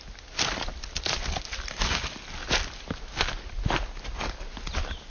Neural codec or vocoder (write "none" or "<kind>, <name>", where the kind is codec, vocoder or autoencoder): none